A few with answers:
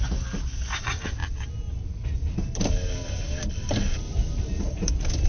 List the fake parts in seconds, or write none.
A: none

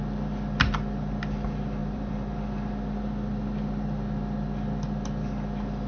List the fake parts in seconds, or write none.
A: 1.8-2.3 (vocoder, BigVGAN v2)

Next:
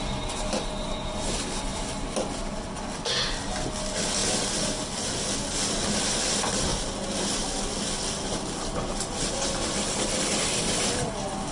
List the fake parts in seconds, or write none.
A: none